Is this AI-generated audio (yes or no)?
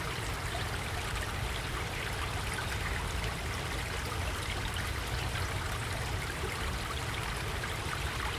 yes